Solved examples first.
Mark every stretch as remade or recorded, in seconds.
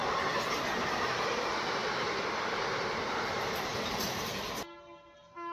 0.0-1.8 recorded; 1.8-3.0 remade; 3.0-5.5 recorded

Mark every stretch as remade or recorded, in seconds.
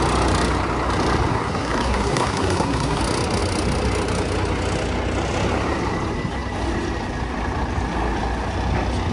0.0-1.3 recorded; 1.3-3.0 remade; 3.0-9.1 recorded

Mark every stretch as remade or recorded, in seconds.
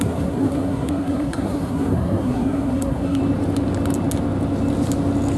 0.0-3.2 remade; 3.2-5.4 recorded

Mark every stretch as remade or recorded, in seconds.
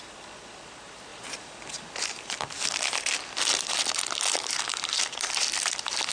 0.0-6.1 remade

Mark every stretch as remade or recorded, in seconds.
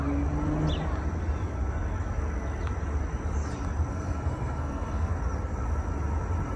0.0-3.9 recorded; 3.9-5.1 remade; 5.1-6.6 recorded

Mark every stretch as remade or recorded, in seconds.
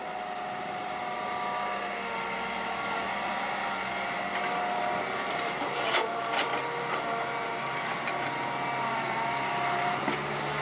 0.0-10.6 recorded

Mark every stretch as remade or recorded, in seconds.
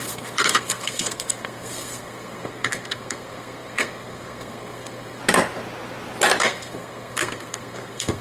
0.0-5.2 remade; 5.2-6.4 recorded; 6.4-8.2 remade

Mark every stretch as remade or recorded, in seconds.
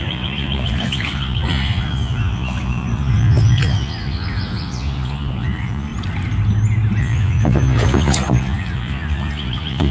0.0-5.9 remade; 5.9-7.0 recorded; 7.0-9.9 remade